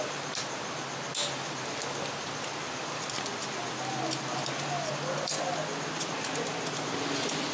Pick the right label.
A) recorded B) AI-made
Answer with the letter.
A